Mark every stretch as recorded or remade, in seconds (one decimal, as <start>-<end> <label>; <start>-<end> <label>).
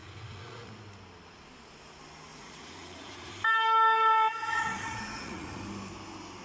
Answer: 0.0-0.7 remade; 0.7-2.3 recorded; 2.3-3.3 remade; 3.3-4.3 recorded; 4.3-5.6 remade; 5.6-6.4 recorded